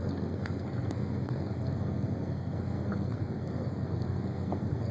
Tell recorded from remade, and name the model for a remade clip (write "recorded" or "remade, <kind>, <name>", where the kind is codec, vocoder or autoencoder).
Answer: remade, codec, SNAC